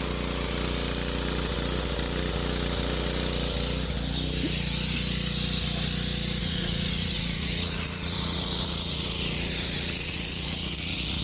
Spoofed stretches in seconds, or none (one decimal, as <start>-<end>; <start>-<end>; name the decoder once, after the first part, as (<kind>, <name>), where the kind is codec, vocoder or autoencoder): 6.4-11.2 (vocoder, Vocos)